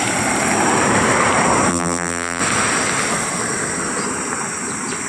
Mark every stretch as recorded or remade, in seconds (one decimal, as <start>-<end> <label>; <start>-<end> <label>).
0.0-1.7 recorded; 1.7-2.4 remade; 2.4-5.1 recorded